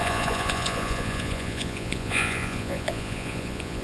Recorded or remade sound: remade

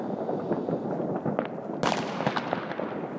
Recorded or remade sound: recorded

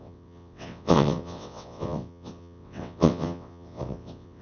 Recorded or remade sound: remade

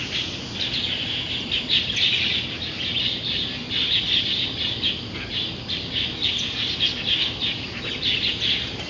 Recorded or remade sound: recorded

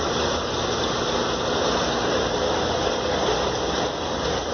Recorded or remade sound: recorded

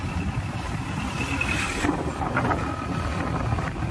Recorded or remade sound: recorded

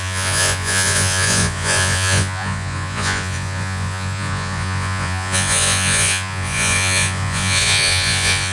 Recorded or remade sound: remade